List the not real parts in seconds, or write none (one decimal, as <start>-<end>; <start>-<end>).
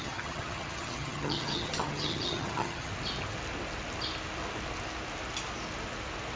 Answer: 0.0-2.9